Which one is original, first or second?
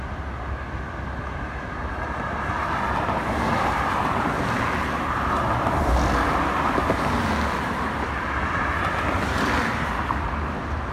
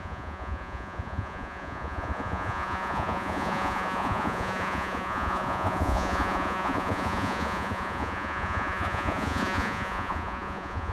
first